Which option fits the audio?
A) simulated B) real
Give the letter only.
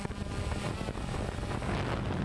B